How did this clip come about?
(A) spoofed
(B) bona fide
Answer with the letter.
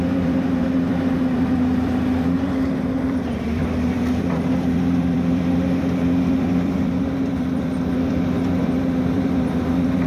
A